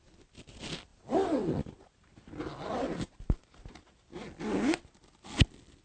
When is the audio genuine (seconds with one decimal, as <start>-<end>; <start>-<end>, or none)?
0.0-5.8